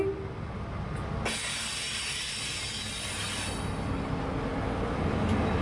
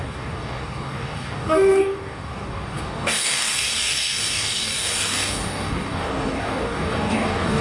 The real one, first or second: first